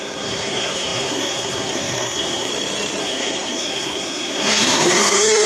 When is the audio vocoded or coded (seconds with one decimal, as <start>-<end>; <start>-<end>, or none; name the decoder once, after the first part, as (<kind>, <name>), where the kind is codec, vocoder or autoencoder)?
0.0-2.5 (codec, SNAC); 3.0-5.5